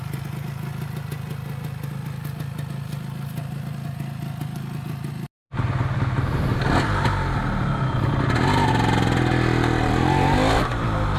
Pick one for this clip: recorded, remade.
recorded